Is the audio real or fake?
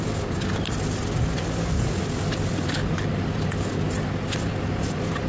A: real